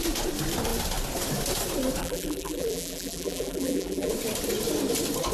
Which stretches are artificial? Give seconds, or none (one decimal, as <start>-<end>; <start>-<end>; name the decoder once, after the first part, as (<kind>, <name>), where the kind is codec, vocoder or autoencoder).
2.0-4.1 (vocoder, BigVGAN v2)

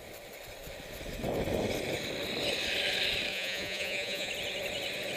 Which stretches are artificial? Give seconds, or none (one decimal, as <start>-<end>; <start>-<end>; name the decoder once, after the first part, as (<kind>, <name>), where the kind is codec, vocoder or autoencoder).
3.3-4.3 (vocoder, Vocos)

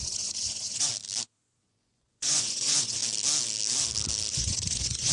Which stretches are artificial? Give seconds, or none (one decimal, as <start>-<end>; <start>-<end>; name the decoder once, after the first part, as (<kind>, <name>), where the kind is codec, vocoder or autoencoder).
0.0-0.9 (vocoder, Vocos); 1.4-3.0; 4.3-5.1

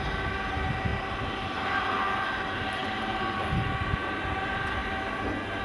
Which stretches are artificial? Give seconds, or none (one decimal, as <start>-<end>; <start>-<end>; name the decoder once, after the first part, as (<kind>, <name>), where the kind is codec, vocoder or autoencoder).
none

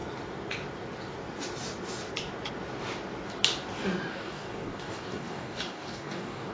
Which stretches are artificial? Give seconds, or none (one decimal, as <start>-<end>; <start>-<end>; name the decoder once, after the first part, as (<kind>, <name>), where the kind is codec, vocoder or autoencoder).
4.1-6.5 (codec, DAC)

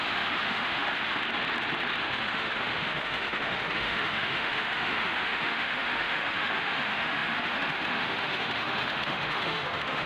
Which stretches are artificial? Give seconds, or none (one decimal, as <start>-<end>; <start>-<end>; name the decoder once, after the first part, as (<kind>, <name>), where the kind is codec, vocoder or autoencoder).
0.0-1.2 (autoencoder, DAC-VAE); 2.0-10.1

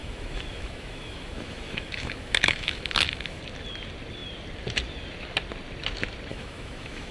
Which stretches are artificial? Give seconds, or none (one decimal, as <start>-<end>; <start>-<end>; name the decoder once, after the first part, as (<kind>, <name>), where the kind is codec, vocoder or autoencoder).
0.0-3.4 (autoencoder, DAC-VAE); 6.3-7.1